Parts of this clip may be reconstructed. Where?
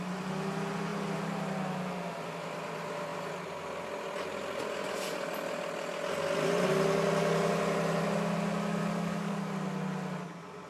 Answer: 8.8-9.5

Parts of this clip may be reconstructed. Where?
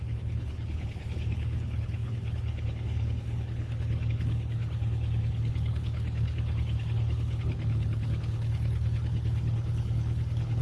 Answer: 0.0-10.6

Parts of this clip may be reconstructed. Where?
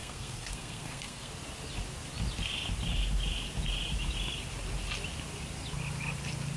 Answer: 0.0-1.3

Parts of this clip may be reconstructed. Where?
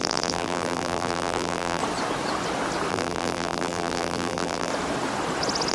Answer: 0.0-1.8; 2.9-4.7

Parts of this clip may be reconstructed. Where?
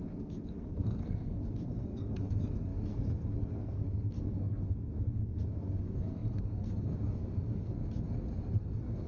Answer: 0.0-7.8; 8.6-9.1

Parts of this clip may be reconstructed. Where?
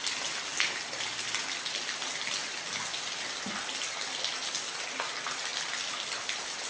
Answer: none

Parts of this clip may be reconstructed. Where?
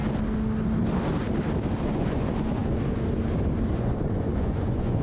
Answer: 1.8-2.6; 3.7-5.0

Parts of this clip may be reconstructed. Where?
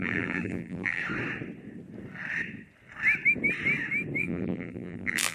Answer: 0.0-1.0; 4.2-5.3